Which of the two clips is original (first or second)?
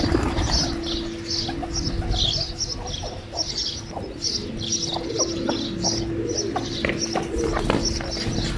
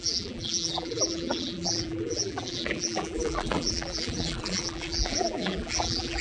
first